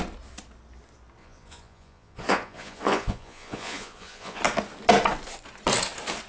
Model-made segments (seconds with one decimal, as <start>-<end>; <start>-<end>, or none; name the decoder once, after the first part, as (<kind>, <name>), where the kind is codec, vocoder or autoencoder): 1.2-4.4 (vocoder, Vocos)